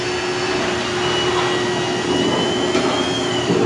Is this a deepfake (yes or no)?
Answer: no